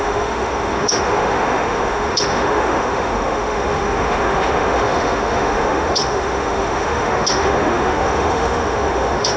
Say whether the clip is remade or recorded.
remade